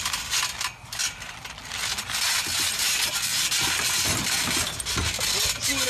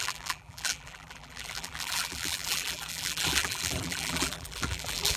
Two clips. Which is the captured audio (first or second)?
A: first